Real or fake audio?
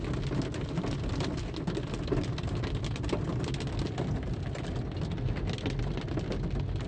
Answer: real